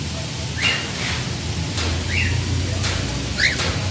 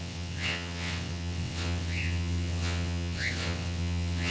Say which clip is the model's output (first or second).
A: second